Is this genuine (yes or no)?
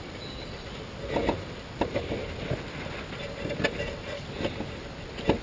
yes